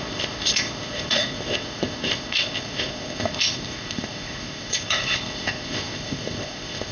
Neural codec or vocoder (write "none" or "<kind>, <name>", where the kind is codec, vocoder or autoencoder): codec, ZipCodec